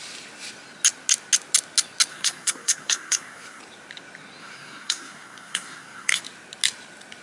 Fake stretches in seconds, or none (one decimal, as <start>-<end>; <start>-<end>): 2.1-3.6; 4.4-6.2